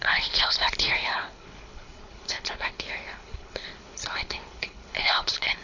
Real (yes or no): no